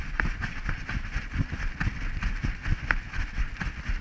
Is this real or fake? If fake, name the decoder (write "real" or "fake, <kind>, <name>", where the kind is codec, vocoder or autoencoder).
real